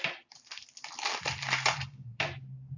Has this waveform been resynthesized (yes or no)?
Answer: no